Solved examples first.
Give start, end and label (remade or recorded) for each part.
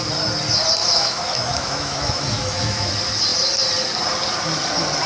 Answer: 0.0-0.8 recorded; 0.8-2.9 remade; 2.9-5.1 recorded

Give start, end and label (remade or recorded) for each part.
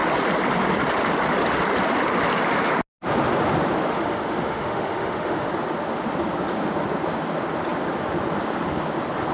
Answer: 0.0-3.9 recorded; 3.9-5.5 remade; 5.5-9.3 recorded